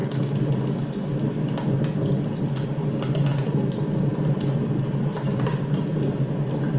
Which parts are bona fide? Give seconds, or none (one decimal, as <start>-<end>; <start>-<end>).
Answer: 0.0-6.8